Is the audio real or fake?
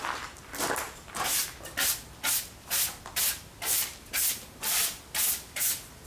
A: real